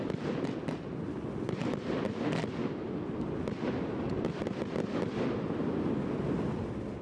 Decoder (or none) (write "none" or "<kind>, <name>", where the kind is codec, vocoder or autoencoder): none